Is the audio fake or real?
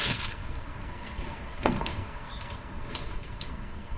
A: fake